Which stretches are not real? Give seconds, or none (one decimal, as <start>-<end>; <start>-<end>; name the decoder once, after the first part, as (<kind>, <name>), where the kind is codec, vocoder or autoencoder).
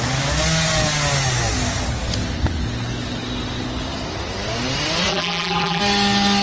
5.1-5.8 (vocoder, BigVGAN v2)